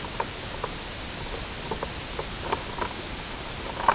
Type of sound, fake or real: real